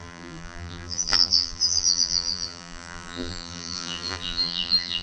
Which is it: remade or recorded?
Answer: remade